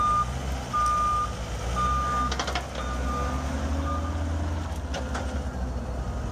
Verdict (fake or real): real